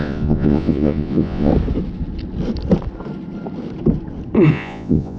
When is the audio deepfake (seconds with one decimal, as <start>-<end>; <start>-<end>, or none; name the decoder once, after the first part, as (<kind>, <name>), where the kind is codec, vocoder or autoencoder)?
0.0-1.5 (vocoder, Vocos); 4.5-5.2